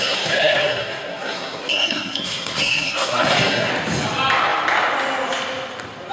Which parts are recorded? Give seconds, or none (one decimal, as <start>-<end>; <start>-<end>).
3.7-6.1